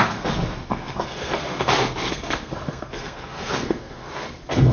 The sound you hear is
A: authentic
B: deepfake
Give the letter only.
B